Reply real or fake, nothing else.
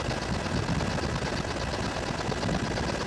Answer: real